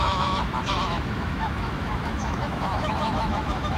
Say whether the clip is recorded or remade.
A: remade